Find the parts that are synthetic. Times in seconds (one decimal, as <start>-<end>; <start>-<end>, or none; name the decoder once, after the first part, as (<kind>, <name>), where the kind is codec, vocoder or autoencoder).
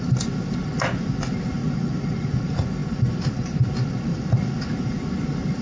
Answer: 1.6-2.3 (vocoder, Vocos); 4.1-4.6